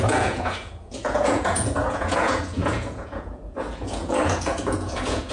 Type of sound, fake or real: fake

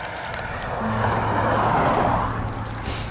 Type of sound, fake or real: real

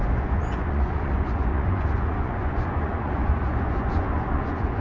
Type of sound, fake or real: fake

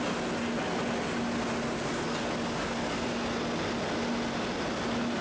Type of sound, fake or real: real